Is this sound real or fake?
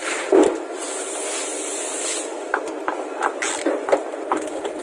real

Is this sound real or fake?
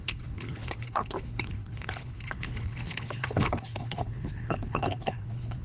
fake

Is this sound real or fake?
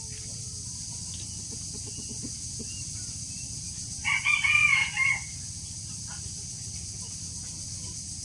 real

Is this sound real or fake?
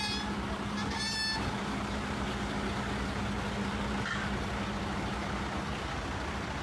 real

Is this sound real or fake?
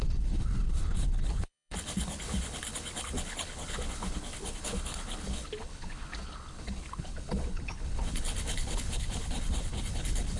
fake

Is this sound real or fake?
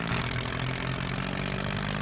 real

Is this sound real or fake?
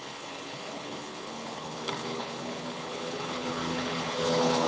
fake